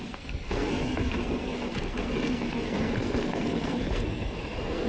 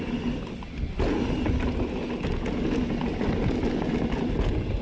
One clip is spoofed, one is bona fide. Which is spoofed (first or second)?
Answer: first